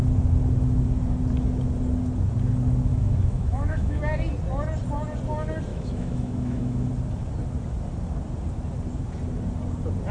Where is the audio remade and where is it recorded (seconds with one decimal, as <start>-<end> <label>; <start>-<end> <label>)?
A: 0.0-2.9 recorded; 2.9-4.0 remade; 4.0-5.7 recorded; 5.7-6.9 remade; 6.9-10.1 recorded